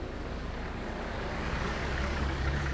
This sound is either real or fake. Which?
fake